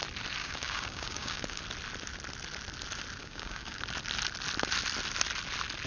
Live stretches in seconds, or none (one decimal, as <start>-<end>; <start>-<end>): 0.0-0.4; 1.6-3.2; 3.8-5.9